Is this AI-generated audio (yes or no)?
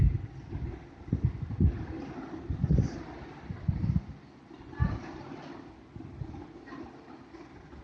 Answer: no